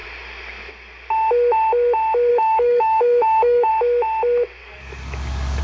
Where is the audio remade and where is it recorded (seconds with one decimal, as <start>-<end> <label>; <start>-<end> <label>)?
0.0-2.3 recorded; 2.3-3.7 remade; 3.7-4.6 recorded; 4.6-5.6 remade